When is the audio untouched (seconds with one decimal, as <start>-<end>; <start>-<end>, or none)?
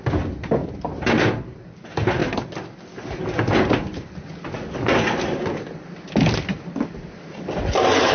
2.2-3.5; 4.3-6.2